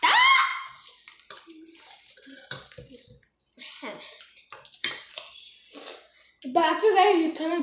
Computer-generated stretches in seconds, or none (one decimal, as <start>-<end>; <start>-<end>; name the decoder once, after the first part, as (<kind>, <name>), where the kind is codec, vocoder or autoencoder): 0.5-5.1 (vocoder, BigVGAN v2); 6.6-7.6